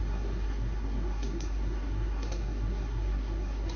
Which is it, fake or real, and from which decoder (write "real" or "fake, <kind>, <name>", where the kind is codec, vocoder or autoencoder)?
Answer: fake, codec, SNAC